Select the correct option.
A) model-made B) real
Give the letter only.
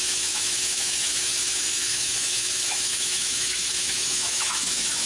A